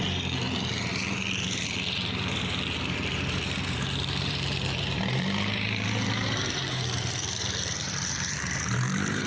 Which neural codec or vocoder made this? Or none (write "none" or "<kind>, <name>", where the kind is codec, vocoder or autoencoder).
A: vocoder, BigVGAN v2